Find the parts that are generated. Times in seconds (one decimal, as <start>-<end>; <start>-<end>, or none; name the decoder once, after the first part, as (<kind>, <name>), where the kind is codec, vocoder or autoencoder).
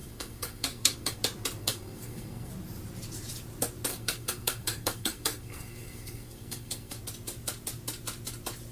0.0-1.2 (codec, SNAC); 1.6-2.5; 3.9-7.0